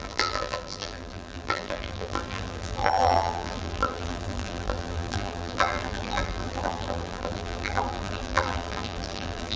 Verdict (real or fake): fake